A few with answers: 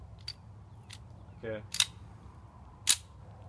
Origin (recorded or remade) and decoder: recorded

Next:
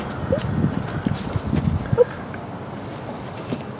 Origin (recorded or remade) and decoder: recorded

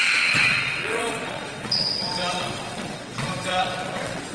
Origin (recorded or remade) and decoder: remade, vocoder, WaveNeXt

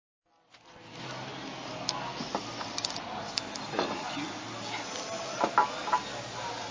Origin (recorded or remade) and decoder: recorded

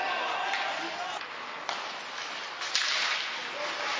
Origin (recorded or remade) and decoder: recorded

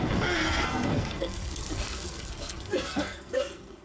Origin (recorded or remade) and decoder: remade, codec, SNAC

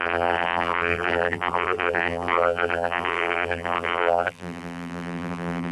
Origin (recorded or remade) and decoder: remade, vocoder, BigVGAN v2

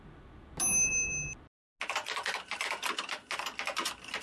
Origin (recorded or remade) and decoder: recorded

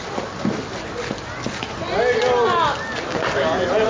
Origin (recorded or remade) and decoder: recorded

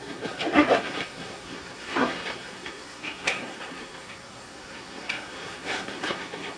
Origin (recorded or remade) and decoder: remade, codec, SNAC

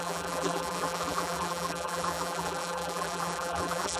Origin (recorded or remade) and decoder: remade, vocoder, BigVGAN v2